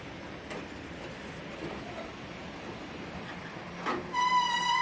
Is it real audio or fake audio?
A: real